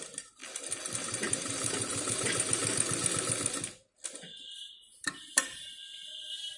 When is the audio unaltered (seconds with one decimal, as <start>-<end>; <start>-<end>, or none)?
0.4-0.9; 2.6-4.1; 5.7-6.6